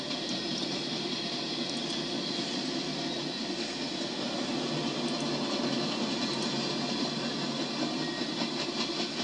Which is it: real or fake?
real